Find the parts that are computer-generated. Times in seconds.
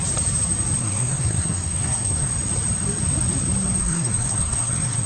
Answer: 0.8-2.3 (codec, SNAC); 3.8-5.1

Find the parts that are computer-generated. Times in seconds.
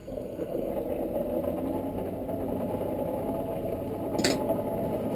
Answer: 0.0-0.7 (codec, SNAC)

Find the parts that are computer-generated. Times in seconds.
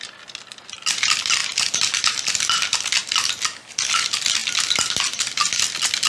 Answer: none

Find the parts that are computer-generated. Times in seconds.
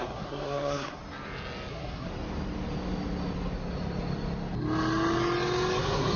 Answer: 0.0-1.0 (codec, SNAC); 1.7-2.1; 5.8-6.2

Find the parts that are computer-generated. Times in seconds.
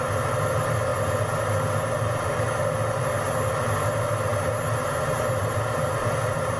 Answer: none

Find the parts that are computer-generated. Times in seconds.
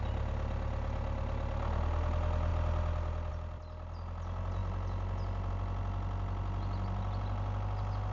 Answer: none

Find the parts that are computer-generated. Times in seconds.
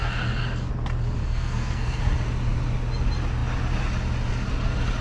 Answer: 0.0-0.7 (codec, SNAC); 1.2-2.0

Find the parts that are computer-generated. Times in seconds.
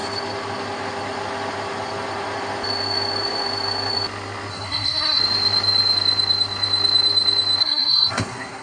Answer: 4.5-5.2 (codec, SNAC); 7.6-8.6